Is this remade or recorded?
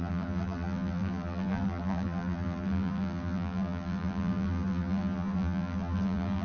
remade